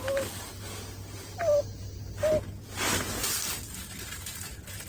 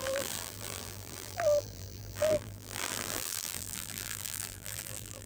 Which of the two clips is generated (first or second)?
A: second